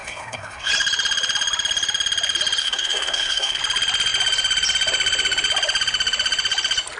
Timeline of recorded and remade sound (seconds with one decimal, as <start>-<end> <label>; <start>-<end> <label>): 0.0-0.7 remade; 0.7-2.6 recorded; 2.6-3.6 remade; 3.6-7.0 recorded